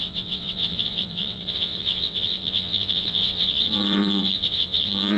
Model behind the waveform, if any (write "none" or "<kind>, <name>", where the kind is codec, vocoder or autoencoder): vocoder, WaveNeXt